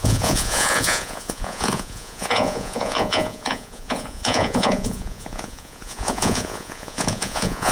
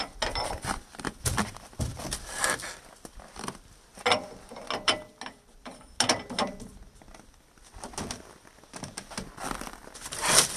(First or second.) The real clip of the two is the second